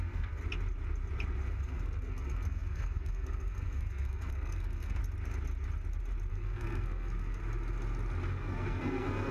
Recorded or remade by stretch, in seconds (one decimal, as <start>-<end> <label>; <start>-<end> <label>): 0.0-0.4 remade; 0.4-1.5 recorded; 1.5-5.0 remade; 5.0-6.3 recorded; 6.3-7.4 remade; 7.4-8.3 recorded; 8.3-9.3 remade